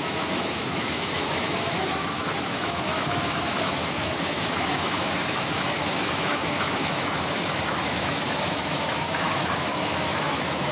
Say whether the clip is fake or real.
fake